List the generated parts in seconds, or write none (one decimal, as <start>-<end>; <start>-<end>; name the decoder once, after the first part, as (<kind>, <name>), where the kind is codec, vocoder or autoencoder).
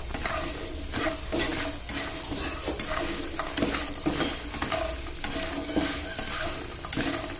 none